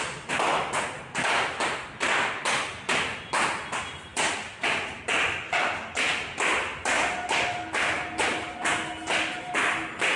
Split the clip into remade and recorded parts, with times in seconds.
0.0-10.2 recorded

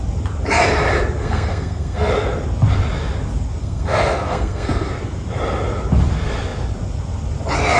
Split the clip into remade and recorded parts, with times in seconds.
0.0-1.2 recorded; 1.2-2.1 remade; 2.1-3.6 recorded; 3.6-4.9 remade; 4.9-7.8 recorded

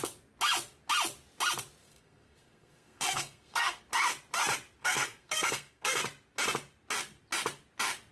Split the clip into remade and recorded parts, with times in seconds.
0.0-1.8 recorded; 1.8-3.8 remade; 3.8-4.8 recorded; 4.8-6.0 remade; 6.0-8.1 recorded